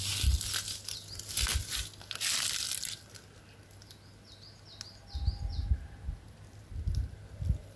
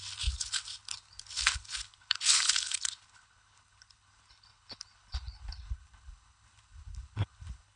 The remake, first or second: second